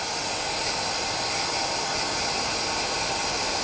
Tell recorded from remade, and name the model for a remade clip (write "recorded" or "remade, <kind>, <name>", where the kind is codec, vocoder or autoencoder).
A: recorded